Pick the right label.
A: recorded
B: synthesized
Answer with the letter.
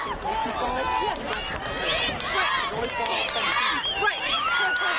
A